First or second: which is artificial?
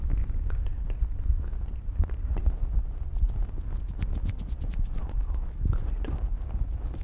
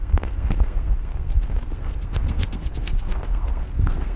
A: second